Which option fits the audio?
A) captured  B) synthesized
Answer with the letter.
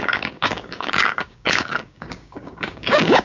B